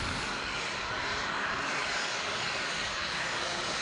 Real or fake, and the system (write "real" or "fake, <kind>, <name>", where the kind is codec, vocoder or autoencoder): fake, codec, DAC